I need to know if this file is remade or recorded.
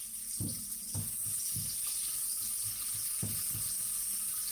recorded